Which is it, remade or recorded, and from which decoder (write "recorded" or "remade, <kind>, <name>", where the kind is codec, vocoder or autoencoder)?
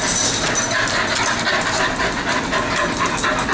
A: recorded